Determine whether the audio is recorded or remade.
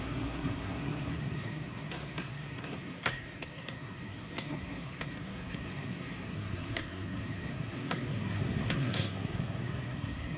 remade